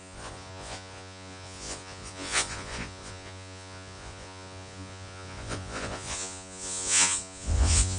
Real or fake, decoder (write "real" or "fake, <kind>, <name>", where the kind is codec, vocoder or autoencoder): fake, vocoder, Vocos